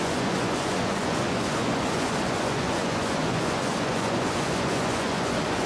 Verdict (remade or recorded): remade